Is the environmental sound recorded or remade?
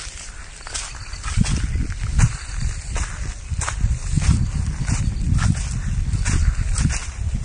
recorded